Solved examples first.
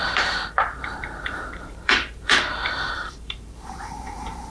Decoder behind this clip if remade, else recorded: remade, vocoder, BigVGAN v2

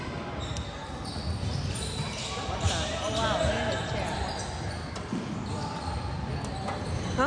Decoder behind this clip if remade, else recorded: recorded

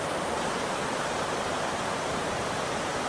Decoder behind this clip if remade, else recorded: remade, vocoder, BigVGAN v2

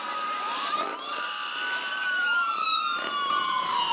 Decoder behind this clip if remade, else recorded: remade, vocoder, BigVGAN v2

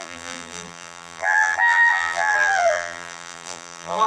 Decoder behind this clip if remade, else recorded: remade, vocoder, BigVGAN v2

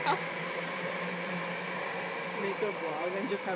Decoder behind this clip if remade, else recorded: remade, vocoder, BigVGAN v2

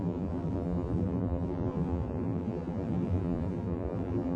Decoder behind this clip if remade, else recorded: remade, vocoder, BigVGAN v2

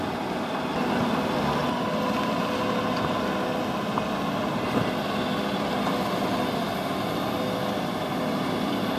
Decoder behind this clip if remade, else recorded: recorded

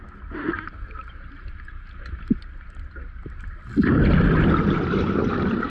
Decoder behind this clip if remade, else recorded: recorded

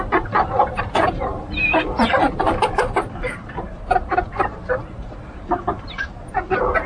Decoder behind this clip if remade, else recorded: remade, vocoder, BigVGAN v2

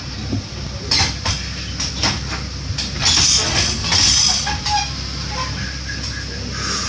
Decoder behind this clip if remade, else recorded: recorded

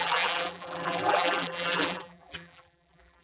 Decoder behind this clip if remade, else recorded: remade, vocoder, BigVGAN v2